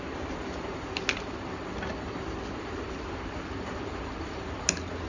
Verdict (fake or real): real